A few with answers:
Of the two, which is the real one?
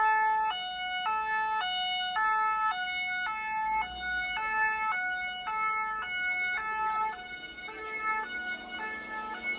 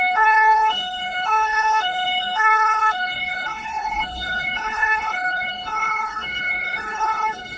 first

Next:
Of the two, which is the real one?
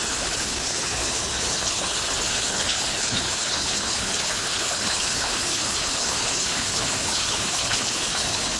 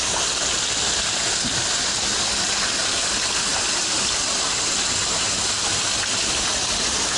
second